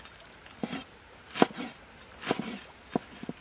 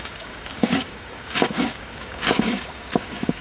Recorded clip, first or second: first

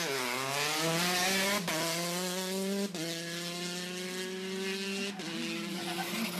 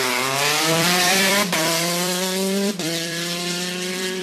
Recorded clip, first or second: first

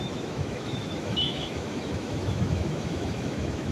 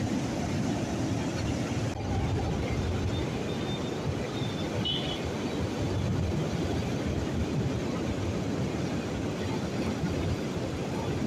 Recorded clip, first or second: second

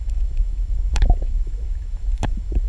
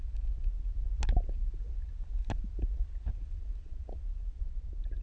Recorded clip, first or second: second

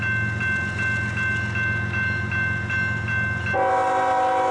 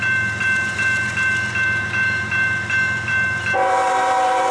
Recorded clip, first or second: first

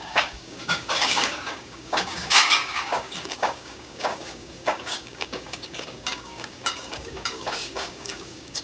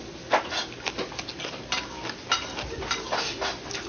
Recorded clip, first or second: second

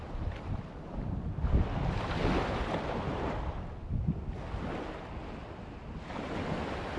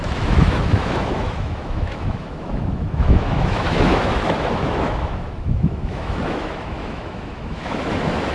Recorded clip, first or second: first